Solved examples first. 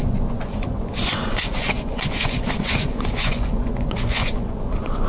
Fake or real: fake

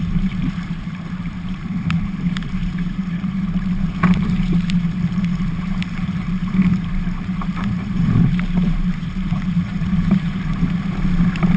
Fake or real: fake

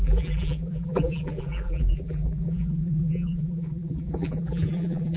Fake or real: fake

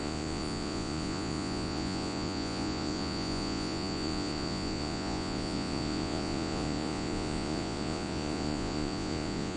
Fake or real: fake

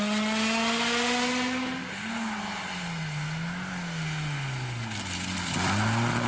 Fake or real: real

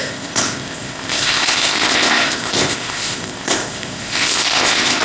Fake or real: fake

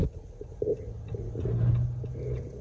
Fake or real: real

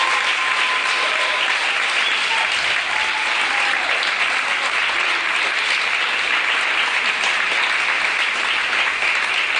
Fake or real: real